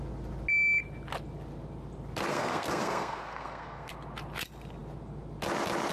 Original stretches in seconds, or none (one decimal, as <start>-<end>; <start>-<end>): 0.0-2.3; 3.9-5.9